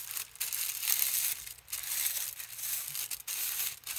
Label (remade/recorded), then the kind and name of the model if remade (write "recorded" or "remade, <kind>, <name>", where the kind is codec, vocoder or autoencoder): recorded